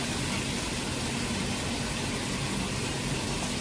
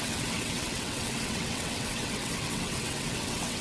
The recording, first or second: first